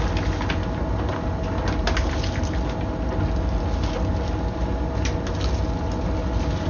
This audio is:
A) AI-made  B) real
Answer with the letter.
B